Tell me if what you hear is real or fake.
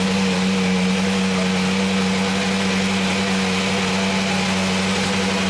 real